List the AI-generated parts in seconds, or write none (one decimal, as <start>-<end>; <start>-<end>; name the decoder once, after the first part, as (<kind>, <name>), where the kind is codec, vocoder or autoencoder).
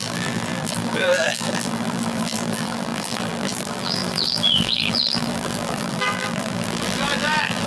0.0-7.7 (vocoder, BigVGAN v2)